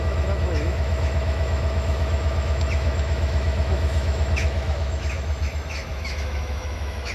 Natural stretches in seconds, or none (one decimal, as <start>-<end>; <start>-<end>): none

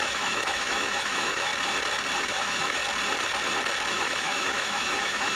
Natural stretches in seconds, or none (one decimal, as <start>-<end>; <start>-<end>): 1.5-2.2; 2.8-3.9

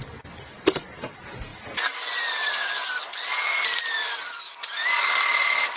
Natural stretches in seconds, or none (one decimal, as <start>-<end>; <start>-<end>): 0.0-5.8

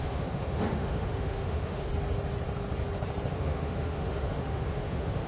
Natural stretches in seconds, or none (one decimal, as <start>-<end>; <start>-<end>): 1.9-3.3